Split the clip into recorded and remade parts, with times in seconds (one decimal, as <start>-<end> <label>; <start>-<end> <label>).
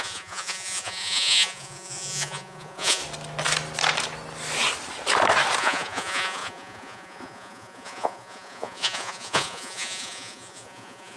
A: 0.0-3.0 remade; 3.0-5.6 recorded; 5.6-11.2 remade